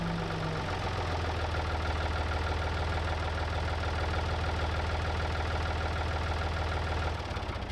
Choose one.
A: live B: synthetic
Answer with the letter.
A